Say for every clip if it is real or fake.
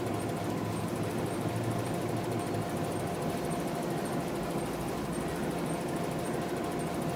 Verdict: real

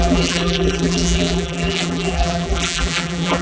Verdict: fake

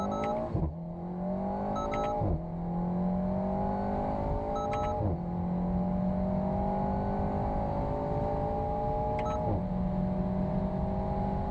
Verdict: real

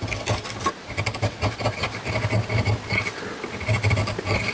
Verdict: real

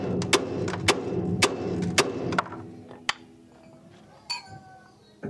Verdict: real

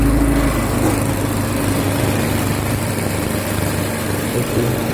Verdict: real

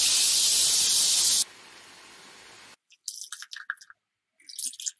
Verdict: real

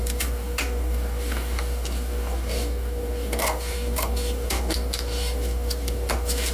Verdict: fake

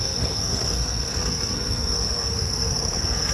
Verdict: fake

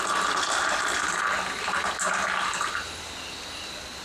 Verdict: real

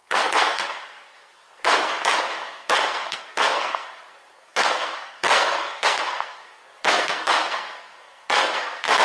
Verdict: fake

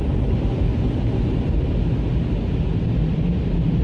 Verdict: real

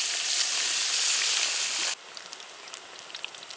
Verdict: real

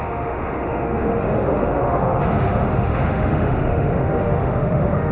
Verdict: fake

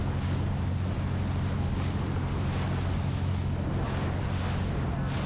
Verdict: real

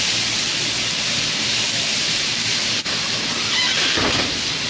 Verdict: real